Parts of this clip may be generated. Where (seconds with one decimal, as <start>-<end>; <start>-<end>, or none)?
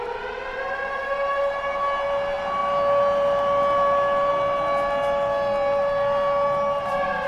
none